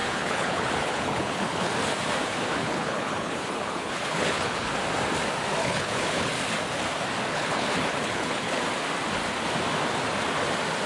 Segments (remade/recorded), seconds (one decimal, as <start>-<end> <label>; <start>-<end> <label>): 0.0-1.7 remade; 1.7-2.6 recorded; 2.6-4.7 remade; 4.7-5.6 recorded; 5.6-6.3 remade; 6.3-7.3 recorded; 7.3-8.6 remade; 8.6-10.9 recorded